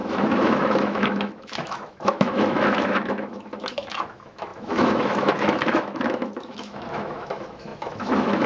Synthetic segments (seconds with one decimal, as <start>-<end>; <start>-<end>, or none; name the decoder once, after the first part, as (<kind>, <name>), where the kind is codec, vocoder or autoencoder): 0.0-8.5 (autoencoder, DAC-VAE)